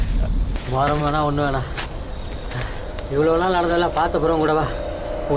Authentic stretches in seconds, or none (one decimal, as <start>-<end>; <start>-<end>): 0.0-5.4